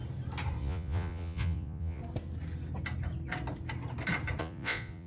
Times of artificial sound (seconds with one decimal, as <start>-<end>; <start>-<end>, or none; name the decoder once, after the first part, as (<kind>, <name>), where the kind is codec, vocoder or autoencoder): 0.6-2.0 (vocoder, Vocos); 4.4-5.1